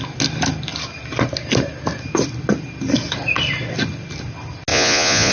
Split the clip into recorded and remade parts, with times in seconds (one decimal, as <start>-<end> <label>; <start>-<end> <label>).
0.0-4.7 recorded; 4.7-5.3 remade